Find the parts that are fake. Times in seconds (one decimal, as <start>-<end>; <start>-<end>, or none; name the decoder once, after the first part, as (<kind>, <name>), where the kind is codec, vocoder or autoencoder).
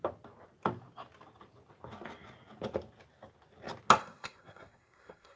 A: 4.0-5.4 (codec, SNAC)